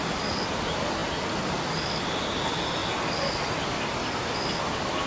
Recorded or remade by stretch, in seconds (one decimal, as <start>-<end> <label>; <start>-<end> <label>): 0.0-5.1 recorded